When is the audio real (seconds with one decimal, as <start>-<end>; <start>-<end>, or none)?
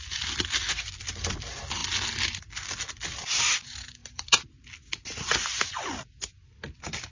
0.0-4.0; 4.7-7.1